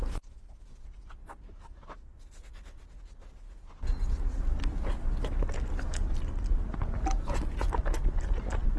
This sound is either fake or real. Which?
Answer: real